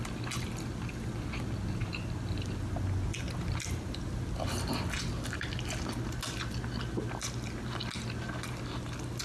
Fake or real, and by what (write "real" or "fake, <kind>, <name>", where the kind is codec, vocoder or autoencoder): real